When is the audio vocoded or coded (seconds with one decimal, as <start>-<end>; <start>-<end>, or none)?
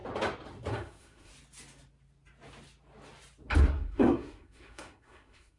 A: 0.7-1.3; 3.6-5.6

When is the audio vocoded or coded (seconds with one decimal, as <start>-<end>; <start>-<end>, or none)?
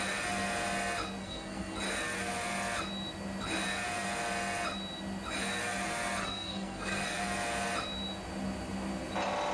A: 1.2-1.8; 6.2-7.2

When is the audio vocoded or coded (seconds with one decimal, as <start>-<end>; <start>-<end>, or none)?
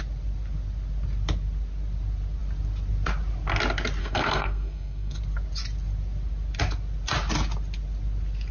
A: 4.0-5.2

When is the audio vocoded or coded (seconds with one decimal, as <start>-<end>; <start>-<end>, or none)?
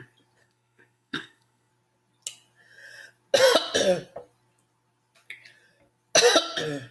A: 0.4-1.7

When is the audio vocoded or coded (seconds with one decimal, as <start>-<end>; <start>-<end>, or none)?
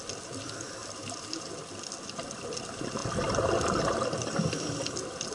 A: none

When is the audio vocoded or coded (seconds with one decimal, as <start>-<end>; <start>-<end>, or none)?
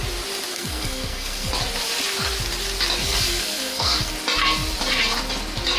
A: 0.5-1.5; 3.0-4.1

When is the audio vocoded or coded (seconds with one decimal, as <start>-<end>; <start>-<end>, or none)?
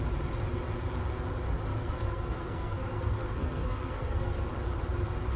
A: 1.7-4.5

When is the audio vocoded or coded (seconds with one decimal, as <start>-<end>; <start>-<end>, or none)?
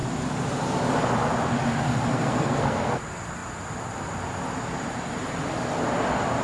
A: 2.1-3.0